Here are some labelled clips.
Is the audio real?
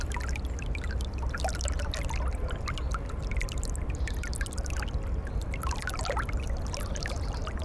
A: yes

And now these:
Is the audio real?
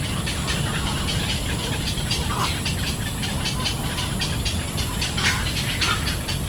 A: yes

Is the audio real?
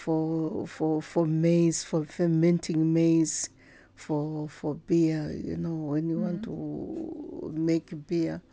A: yes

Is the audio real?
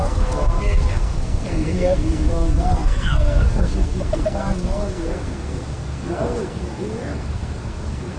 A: no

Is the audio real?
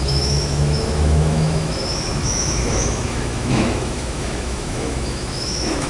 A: no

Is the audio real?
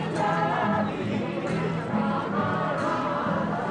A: no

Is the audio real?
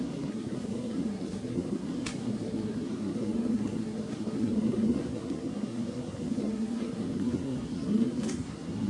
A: no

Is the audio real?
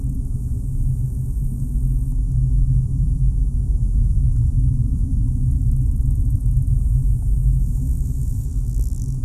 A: no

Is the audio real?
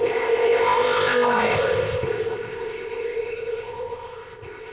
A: no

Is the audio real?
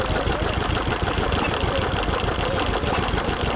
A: yes